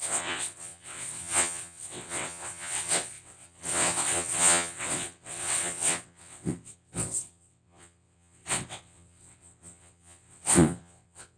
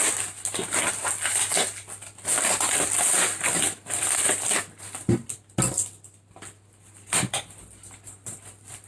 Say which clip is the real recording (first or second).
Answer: second